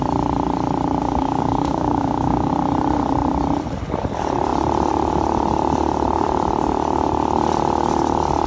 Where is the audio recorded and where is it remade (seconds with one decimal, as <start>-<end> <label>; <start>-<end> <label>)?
0.0-1.0 recorded; 1.0-2.5 remade; 2.5-8.5 recorded